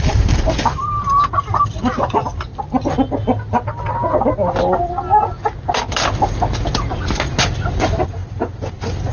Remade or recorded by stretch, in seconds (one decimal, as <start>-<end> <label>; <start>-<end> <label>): 0.0-2.5 remade; 2.5-7.7 recorded; 7.7-8.2 remade; 8.2-8.7 recorded; 8.7-9.1 remade